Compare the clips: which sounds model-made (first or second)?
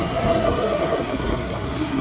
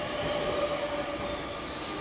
first